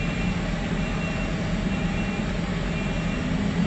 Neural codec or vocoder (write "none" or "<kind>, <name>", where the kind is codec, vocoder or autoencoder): none